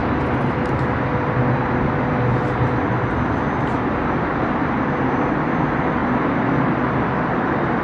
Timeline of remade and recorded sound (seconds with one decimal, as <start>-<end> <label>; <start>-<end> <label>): 0.0-7.8 recorded